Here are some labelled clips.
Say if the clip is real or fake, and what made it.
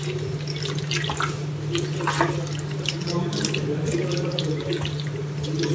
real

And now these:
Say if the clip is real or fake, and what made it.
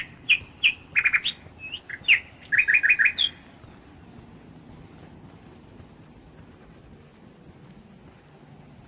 real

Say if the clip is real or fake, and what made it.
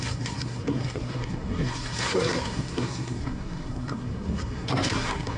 fake, codec, SNAC